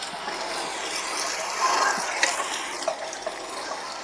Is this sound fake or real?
real